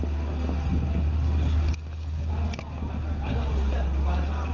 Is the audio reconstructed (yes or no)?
no